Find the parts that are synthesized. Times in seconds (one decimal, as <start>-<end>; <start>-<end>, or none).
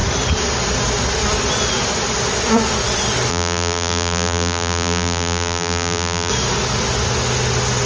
3.3-6.3